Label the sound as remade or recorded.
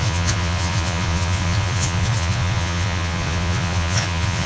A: remade